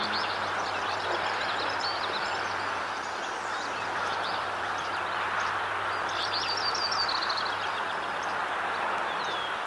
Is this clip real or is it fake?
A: real